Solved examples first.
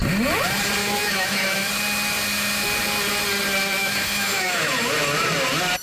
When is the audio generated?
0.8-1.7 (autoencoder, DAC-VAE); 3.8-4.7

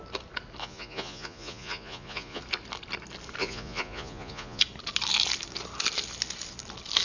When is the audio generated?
0.6-2.4 (vocoder, Vocos); 3.4-4.6

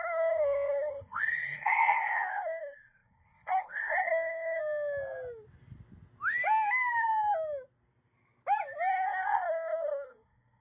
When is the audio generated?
0.0-4.6 (codec, SNAC); 8.9-10.6

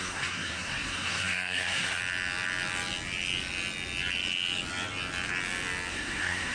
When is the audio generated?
0.0-2.0 (codec, SNAC); 5.9-6.5

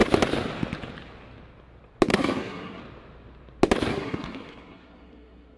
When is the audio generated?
2.1-2.8 (codec, SNAC); 3.9-5.6

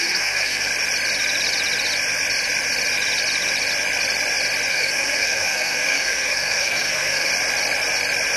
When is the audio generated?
0.0-0.7 (codec, SNAC); 4.7-7.3